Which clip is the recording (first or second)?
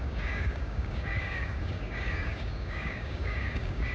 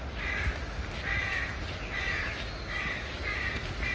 second